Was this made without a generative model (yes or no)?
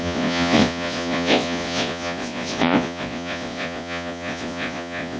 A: no